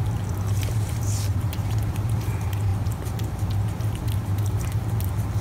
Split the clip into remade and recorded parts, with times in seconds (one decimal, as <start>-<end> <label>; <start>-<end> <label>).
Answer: 0.0-1.3 recorded; 1.3-2.3 remade; 2.3-5.4 recorded